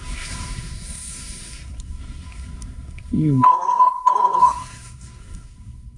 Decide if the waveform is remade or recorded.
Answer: remade